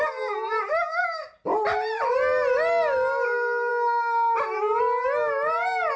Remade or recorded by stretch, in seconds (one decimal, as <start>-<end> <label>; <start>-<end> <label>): 0.0-6.0 recorded